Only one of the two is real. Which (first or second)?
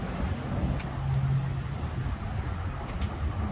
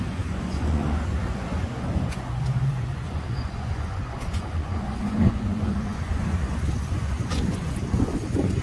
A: first